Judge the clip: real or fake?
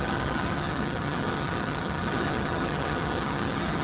fake